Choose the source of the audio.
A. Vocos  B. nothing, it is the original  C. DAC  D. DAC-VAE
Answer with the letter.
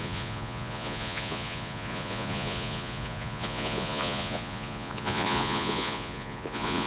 A